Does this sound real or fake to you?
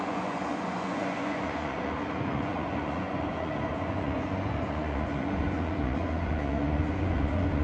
fake